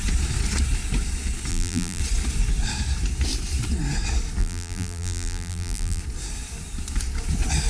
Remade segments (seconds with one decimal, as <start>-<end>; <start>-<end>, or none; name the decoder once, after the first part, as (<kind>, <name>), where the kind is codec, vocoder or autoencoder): 1.5-2.0 (vocoder, BigVGAN v2); 4.4-6.0